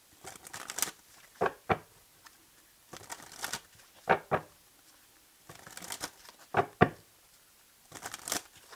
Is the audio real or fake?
real